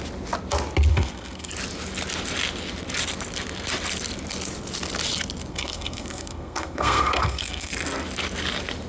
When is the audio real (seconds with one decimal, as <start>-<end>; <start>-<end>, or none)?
0.0-0.9; 1.5-5.5; 7.7-8.9